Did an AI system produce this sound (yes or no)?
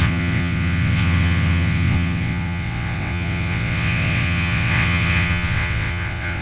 yes